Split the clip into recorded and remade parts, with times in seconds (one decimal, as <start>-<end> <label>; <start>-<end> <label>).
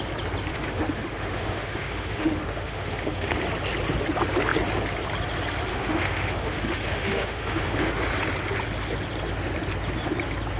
0.0-0.5 recorded; 0.5-3.3 remade; 3.3-5.7 recorded; 5.7-7.9 remade; 7.9-10.6 recorded